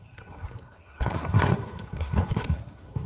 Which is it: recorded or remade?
remade